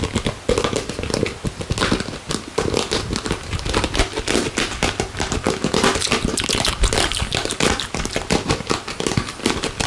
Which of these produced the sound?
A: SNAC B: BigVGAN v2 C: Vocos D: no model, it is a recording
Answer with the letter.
D